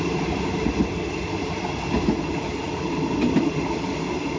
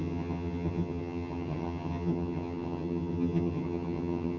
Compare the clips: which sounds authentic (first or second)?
first